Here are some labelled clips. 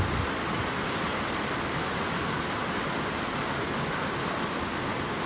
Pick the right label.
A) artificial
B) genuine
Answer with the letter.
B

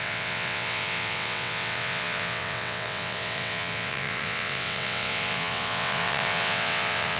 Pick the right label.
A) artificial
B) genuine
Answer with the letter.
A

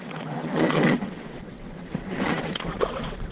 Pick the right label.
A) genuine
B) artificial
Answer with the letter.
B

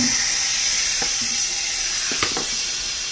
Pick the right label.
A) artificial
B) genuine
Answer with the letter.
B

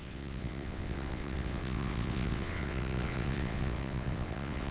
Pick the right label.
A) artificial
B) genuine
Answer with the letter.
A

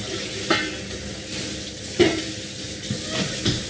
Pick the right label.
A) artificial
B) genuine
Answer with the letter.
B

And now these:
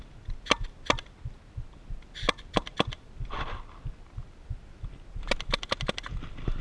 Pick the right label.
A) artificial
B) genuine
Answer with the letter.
B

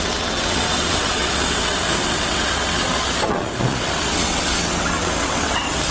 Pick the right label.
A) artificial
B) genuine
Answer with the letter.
A